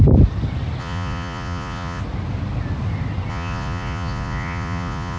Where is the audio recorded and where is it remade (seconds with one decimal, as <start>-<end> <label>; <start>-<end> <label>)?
0.0-0.8 recorded; 0.8-2.0 remade; 2.0-3.3 recorded; 3.3-5.2 remade